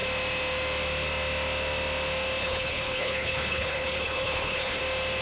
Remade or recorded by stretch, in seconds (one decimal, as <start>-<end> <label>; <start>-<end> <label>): 0.0-2.4 recorded; 2.4-4.8 remade; 4.8-5.2 recorded